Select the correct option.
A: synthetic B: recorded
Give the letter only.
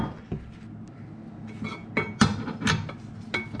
B